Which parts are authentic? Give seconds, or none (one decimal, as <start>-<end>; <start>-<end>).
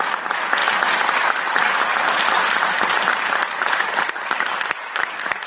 0.0-1.9